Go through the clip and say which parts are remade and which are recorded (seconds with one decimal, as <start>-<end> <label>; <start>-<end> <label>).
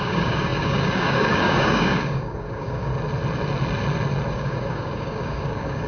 0.0-2.9 remade; 2.9-4.3 recorded; 4.3-5.9 remade